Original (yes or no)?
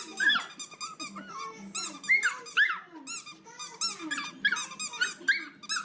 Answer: yes